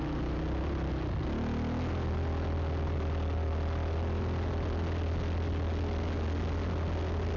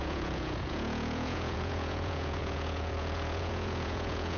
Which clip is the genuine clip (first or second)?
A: first